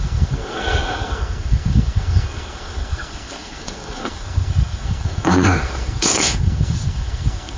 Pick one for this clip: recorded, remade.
remade